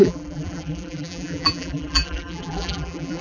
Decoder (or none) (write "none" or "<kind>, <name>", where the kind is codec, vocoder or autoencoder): vocoder, BigVGAN v2